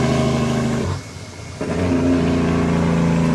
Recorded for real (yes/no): yes